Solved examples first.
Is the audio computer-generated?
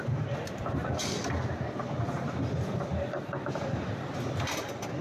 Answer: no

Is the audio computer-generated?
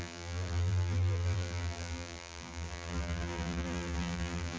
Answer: yes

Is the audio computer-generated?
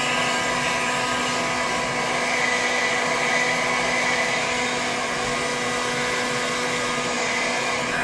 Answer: no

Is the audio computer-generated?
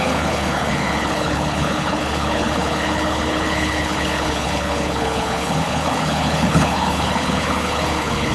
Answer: yes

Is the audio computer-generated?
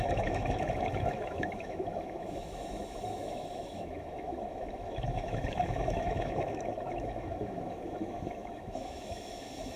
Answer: yes